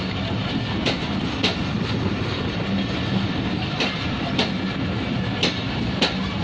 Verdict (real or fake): real